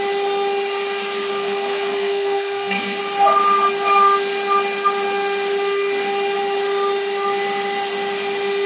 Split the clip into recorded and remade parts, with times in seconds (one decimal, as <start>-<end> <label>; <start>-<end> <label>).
0.0-1.3 recorded; 1.3-3.0 remade; 3.0-8.7 recorded